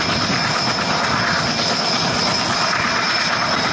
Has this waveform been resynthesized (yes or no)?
no